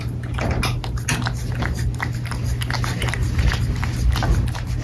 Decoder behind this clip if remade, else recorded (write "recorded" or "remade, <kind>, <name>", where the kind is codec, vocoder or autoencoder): recorded